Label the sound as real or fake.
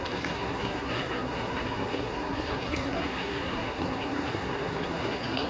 fake